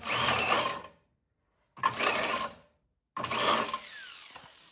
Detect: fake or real real